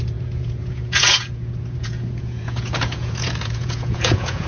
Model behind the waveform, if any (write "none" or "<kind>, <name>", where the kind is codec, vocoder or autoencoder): vocoder, Vocos